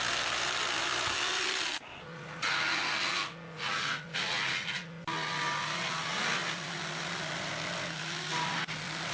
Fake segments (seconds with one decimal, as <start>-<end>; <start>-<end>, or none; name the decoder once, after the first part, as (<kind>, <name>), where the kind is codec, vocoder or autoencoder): none